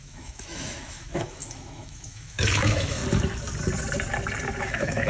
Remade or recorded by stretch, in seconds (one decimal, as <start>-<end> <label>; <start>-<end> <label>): 0.0-3.0 remade; 3.0-4.6 recorded; 4.6-5.1 remade